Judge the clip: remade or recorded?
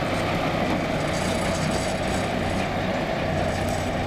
recorded